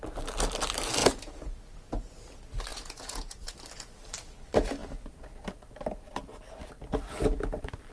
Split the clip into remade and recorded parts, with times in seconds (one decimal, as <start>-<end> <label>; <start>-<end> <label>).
0.0-1.0 recorded; 1.0-1.6 remade; 1.6-2.7 recorded; 2.7-3.5 remade; 3.5-7.9 recorded